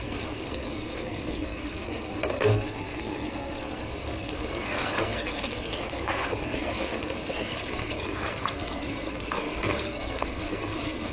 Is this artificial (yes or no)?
yes